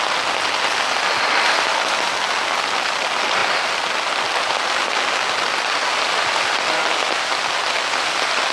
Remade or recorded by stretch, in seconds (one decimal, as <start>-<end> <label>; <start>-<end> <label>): 0.0-8.5 recorded